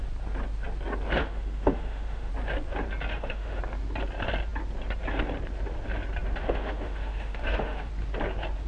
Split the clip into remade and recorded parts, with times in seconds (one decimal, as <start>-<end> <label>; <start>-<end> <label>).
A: 0.0-1.2 recorded; 1.2-2.3 remade; 2.3-3.1 recorded; 3.1-3.6 remade; 3.6-6.4 recorded; 6.4-7.9 remade; 7.9-8.7 recorded